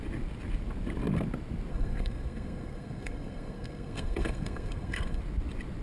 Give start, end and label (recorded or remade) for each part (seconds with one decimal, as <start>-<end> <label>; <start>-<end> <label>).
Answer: 0.0-1.7 recorded; 1.7-5.2 remade; 5.2-5.8 recorded